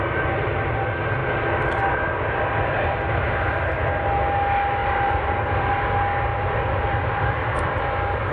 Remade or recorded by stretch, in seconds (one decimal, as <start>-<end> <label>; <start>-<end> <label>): 0.0-4.8 recorded; 4.8-5.7 remade; 5.7-6.3 recorded; 6.3-8.3 remade